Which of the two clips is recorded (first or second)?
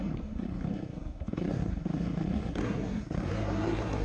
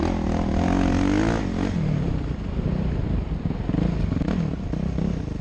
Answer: second